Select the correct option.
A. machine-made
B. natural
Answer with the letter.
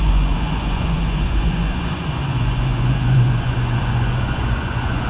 A